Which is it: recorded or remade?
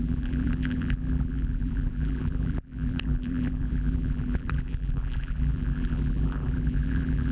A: remade